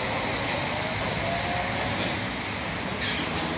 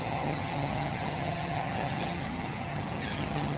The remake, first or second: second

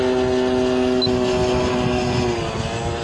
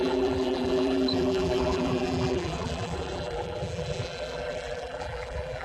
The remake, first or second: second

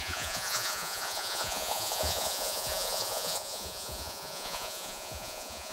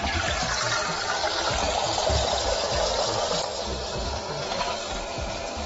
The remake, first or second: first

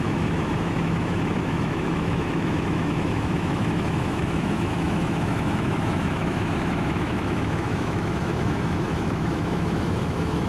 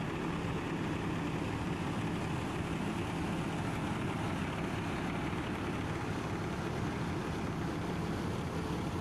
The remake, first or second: first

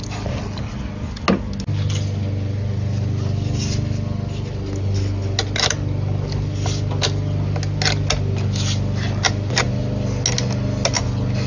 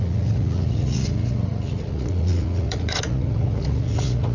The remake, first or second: second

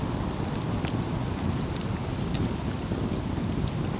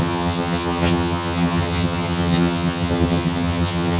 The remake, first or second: second